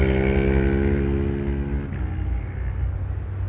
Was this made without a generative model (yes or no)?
yes